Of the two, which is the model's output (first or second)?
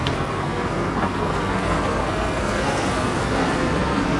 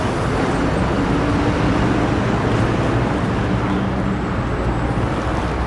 first